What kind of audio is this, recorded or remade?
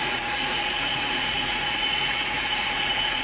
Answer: remade